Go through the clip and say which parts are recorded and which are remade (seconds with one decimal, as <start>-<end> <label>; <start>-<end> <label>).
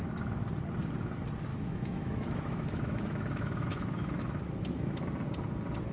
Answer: 0.0-1.5 recorded; 1.5-5.0 remade; 5.0-5.9 recorded